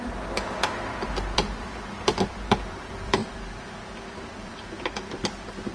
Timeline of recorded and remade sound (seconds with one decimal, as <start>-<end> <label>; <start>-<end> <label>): 0.0-5.7 remade